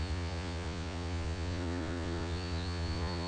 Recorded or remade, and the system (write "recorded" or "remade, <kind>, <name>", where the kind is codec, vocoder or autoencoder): remade, vocoder, Vocos